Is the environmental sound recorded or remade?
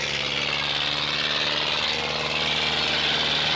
recorded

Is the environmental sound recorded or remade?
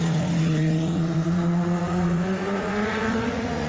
remade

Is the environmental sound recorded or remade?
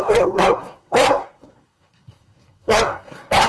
remade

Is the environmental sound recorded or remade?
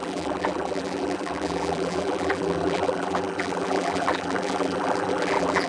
remade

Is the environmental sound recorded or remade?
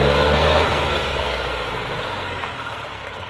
remade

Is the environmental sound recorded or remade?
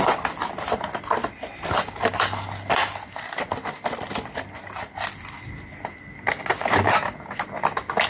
recorded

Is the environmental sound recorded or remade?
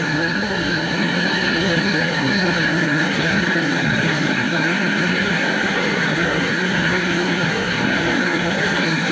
remade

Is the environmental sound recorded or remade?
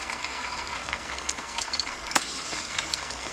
remade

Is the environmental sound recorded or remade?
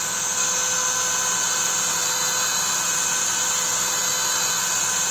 recorded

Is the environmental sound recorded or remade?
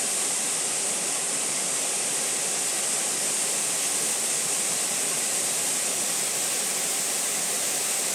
recorded